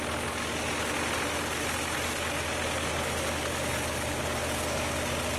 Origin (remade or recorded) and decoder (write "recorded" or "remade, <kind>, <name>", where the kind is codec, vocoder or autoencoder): recorded